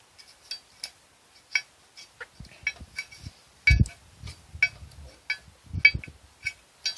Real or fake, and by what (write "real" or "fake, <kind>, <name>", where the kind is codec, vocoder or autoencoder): real